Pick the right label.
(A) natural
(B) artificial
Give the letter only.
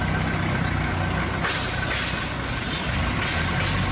A